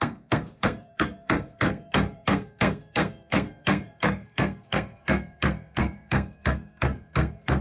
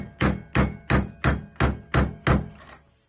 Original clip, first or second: second